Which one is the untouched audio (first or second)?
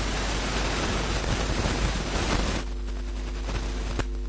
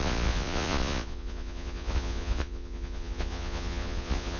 first